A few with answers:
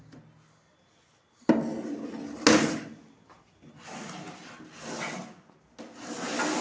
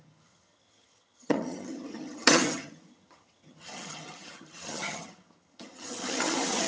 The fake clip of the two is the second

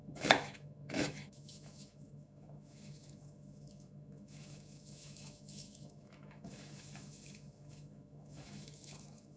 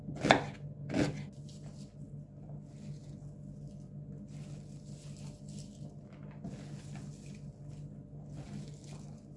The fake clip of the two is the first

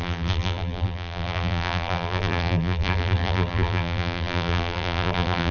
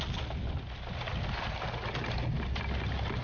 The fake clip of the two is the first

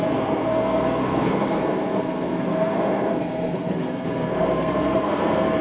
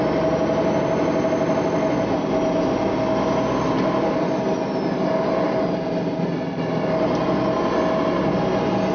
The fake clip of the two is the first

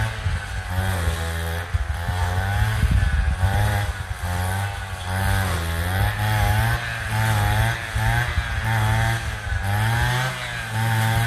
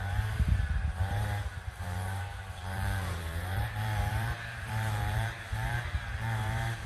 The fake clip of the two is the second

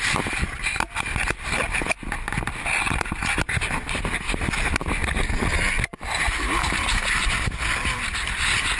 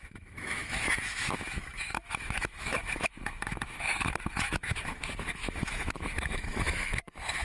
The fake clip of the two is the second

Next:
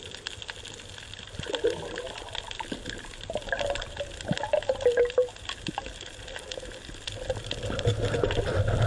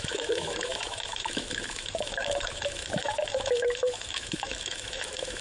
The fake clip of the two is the second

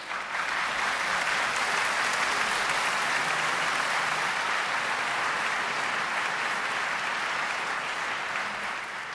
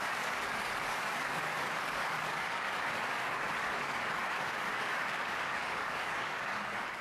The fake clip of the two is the second